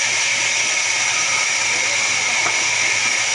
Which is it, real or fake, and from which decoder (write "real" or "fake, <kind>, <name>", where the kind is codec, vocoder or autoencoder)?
real